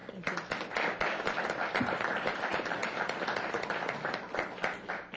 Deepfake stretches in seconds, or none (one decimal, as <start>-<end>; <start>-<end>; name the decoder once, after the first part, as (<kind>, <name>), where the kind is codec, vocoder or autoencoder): none